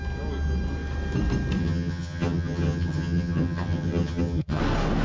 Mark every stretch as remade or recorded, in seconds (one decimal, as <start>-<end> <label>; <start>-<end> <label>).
0.0-1.6 recorded; 1.6-4.6 remade; 4.6-5.0 recorded